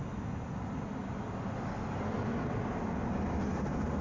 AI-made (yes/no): no